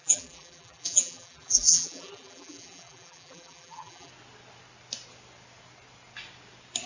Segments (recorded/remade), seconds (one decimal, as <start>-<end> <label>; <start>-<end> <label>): 0.0-4.1 remade; 4.1-6.9 recorded